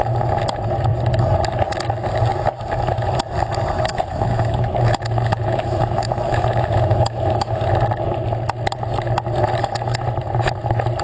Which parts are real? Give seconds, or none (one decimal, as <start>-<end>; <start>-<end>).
0.0-3.9; 7.6-11.0